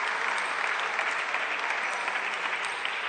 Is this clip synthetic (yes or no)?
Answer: no